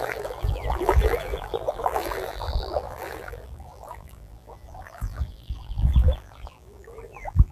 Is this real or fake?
fake